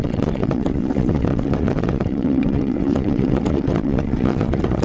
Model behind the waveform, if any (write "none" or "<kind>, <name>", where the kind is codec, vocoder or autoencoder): vocoder, WaveNeXt